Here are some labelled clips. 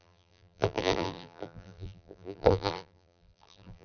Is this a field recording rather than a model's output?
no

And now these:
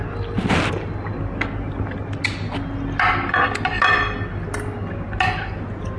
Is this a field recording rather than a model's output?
yes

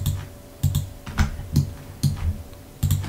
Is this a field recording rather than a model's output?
yes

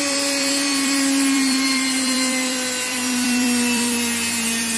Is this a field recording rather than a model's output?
no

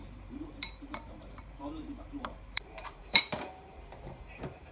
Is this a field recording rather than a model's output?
no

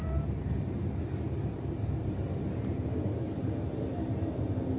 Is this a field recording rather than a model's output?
no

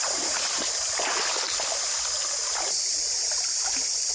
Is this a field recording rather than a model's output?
yes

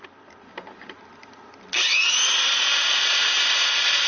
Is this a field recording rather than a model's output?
no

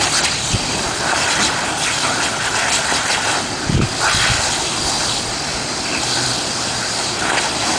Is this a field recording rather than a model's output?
no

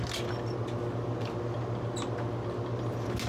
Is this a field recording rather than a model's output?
yes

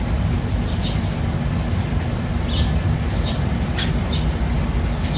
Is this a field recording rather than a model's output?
no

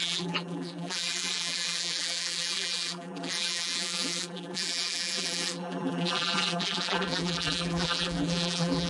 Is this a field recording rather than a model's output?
no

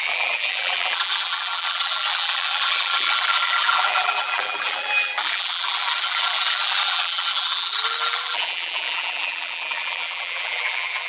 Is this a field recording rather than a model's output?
no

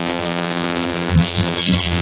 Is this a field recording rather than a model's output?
no